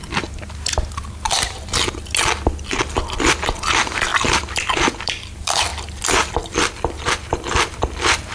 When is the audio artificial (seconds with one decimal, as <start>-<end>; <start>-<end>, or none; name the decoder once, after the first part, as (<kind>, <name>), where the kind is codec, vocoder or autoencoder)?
2.8-5.7 (vocoder, BigVGAN v2); 6.3-8.3